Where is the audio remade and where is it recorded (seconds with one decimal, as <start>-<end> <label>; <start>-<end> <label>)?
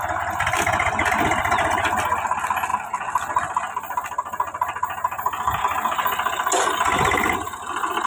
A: 0.0-8.1 recorded